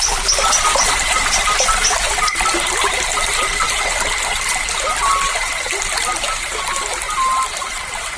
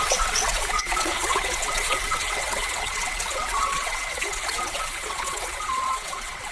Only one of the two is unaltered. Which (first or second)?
first